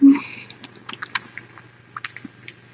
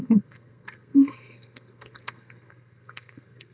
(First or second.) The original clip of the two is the first